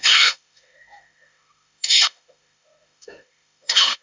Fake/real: fake